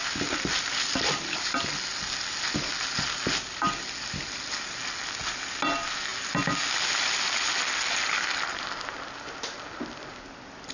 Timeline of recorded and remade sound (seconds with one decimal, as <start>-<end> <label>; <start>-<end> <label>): 0.0-10.7 recorded